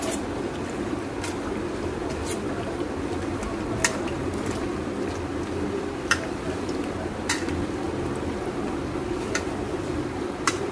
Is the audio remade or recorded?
remade